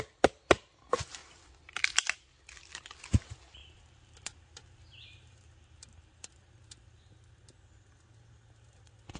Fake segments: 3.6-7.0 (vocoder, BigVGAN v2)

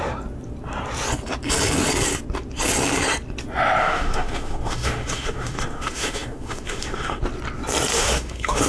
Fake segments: 3.8-7.2 (autoencoder, DAC-VAE); 7.9-8.7

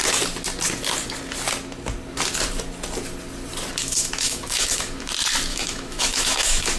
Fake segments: 3.8-5.1 (autoencoder, DAC-VAE); 5.5-6.8